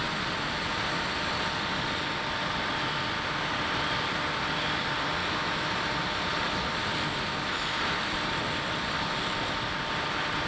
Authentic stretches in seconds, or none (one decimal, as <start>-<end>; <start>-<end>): 0.0-5.2; 5.7-10.5

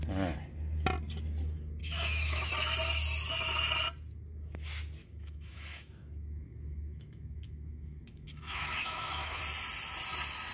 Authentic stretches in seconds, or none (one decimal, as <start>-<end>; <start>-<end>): 0.0-1.8; 2.5-5.0; 9.4-10.5

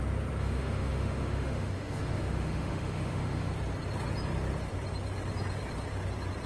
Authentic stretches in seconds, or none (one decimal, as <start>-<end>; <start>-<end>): 0.0-0.4; 3.5-6.5

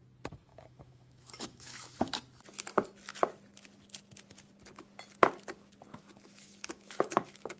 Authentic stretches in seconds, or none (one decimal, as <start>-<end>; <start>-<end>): 0.0-0.5; 2.1-5.9

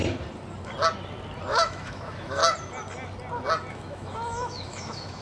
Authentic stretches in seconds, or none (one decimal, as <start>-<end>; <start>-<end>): 0.0-1.5; 2.4-3.7